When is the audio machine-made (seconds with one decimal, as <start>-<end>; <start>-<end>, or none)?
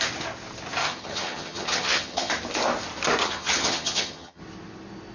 0.8-2.3; 3.2-4.4